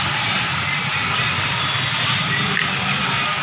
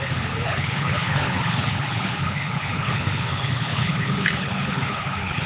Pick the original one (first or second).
first